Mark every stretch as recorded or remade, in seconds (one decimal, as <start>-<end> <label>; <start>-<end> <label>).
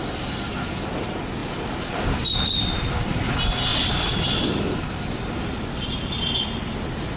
0.0-1.4 recorded; 1.4-2.9 remade; 2.9-3.7 recorded; 3.7-6.7 remade; 6.7-7.2 recorded